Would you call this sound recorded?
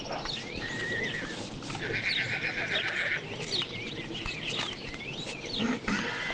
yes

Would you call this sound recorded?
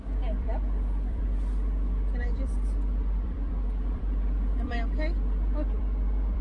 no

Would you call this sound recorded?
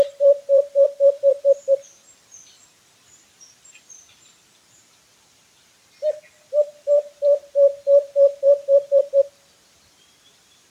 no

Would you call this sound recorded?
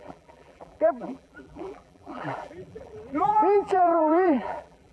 no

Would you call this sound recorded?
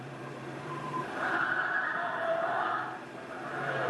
no